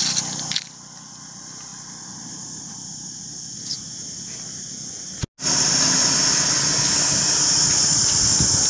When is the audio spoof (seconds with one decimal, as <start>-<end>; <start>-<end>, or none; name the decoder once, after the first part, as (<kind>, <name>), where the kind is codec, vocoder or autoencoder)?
none